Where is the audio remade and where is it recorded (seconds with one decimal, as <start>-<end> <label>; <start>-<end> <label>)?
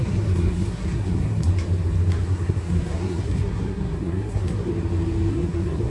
0.0-1.5 remade; 1.5-2.1 recorded; 2.1-4.7 remade; 4.7-5.3 recorded; 5.3-5.9 remade